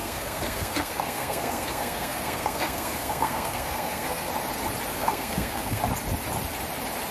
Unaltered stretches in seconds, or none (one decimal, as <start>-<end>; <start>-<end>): 4.3-4.9; 5.8-7.1